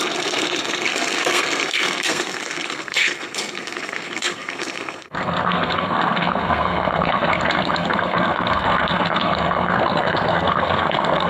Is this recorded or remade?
remade